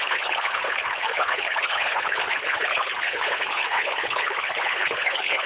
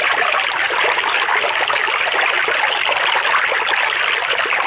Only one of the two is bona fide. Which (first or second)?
second